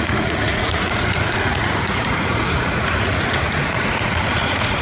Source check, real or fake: fake